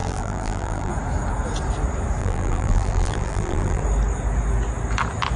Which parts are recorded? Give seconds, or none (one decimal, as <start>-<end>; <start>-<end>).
0.9-2.2; 3.8-5.4